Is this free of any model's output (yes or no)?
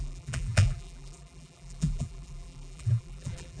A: no